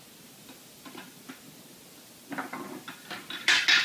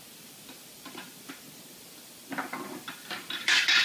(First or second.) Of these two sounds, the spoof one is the second